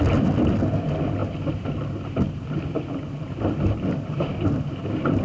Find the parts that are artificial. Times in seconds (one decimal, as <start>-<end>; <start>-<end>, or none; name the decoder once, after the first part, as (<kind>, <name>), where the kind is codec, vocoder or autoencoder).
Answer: none

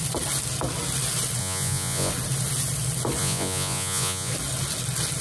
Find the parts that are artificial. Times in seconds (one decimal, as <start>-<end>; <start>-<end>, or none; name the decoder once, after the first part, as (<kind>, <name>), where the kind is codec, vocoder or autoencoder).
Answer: 1.4-2.1 (vocoder, Vocos); 3.2-4.3

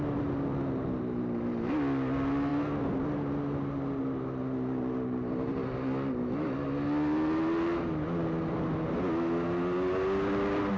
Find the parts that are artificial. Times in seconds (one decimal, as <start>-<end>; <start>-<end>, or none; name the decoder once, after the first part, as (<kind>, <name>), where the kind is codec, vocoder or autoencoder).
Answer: none

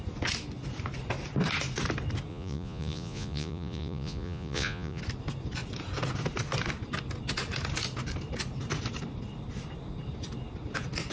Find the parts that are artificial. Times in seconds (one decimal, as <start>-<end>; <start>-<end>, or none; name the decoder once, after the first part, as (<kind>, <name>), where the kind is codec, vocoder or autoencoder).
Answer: 2.3-5.0 (vocoder, Vocos)

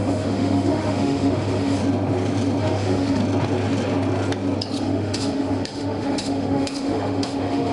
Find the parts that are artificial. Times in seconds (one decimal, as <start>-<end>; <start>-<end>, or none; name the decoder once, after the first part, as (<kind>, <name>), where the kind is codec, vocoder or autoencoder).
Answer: 0.0-1.8 (autoencoder, DAC-VAE); 2.6-3.2; 4.8-7.7

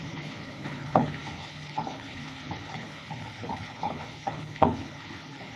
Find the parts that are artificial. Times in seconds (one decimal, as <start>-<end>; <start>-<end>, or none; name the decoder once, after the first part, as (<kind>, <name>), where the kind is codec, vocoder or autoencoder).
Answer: 0.0-5.6 (codec, HILCodec)